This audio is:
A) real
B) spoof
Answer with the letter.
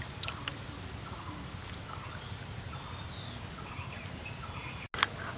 A